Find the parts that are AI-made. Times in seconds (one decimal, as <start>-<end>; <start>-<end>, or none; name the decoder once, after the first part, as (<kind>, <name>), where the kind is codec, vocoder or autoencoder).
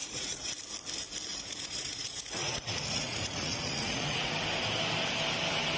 0.0-0.5 (vocoder, Vocos); 1.3-4.3